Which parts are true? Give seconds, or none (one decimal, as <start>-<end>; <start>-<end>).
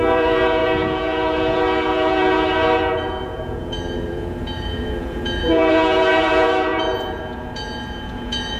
none